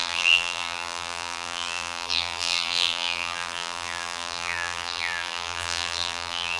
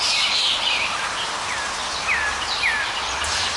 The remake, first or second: first